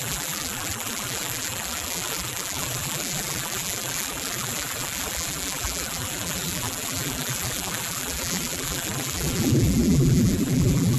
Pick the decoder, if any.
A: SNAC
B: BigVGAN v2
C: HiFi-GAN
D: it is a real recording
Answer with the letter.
B